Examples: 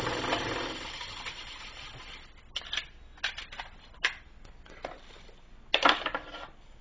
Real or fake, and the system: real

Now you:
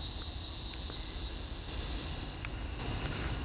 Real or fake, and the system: real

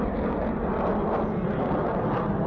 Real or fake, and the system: real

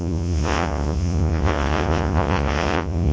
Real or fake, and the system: fake, vocoder, Vocos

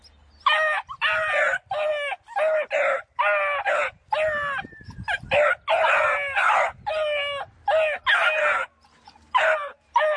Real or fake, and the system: real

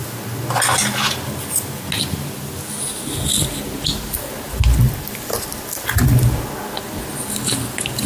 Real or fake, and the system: real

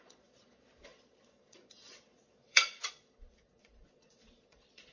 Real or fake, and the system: fake, vocoder, Vocos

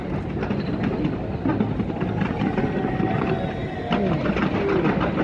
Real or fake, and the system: real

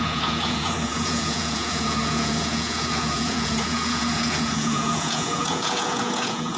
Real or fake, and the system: fake, vocoder, Vocos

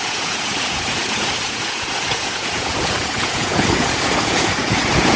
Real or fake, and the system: fake, vocoder, Vocos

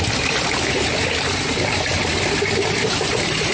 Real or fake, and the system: real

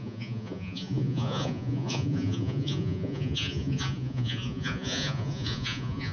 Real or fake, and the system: fake, vocoder, Vocos